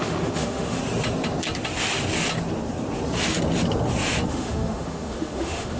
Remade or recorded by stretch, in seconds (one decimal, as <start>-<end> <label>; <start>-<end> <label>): 0.0-0.8 remade; 0.8-4.3 recorded; 4.3-5.8 remade